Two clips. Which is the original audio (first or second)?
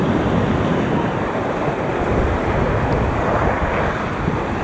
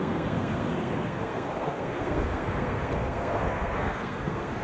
first